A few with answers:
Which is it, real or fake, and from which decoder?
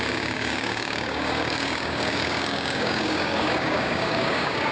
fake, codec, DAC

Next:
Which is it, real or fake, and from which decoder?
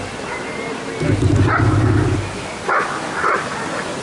real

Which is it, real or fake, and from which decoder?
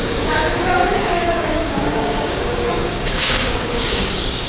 fake, codec, DAC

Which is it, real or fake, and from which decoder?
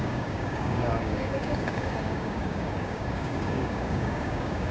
fake, codec, DAC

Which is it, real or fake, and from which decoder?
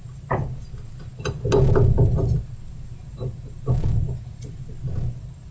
real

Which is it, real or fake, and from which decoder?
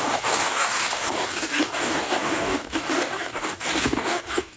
fake, codec, DAC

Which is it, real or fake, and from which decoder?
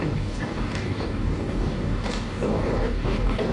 fake, codec, DAC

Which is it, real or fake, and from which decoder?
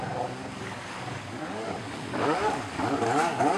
fake, codec, DAC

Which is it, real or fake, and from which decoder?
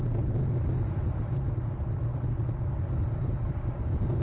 real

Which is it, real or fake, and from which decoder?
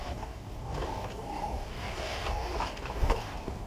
fake, codec, DAC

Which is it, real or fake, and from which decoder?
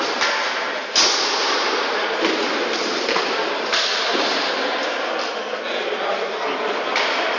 real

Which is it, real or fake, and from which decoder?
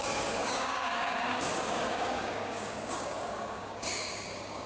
fake, codec, DAC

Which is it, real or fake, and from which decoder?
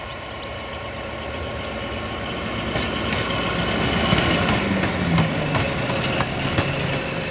real